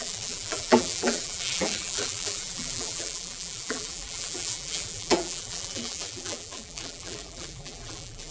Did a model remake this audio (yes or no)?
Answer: yes